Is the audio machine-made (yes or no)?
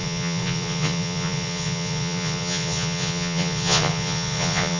yes